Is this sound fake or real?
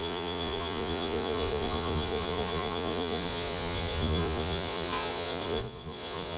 fake